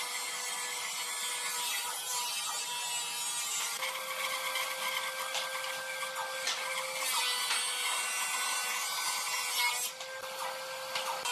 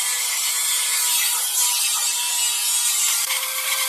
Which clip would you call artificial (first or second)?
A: second